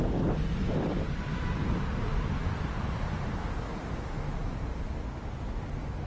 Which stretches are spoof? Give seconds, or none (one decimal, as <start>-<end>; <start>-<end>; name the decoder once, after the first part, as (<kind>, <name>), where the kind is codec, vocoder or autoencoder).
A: 0.7-2.5 (vocoder, BigVGAN v2)